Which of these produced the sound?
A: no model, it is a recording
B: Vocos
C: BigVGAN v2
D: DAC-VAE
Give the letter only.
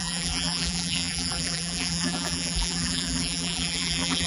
C